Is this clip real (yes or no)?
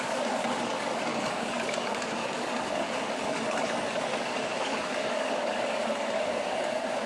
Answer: no